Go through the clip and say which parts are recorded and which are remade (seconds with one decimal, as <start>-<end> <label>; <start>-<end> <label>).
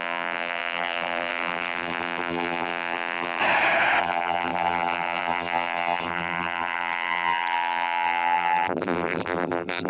0.0-3.4 remade; 3.4-4.0 recorded; 4.0-9.9 remade